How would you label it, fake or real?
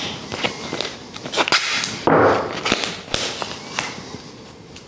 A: real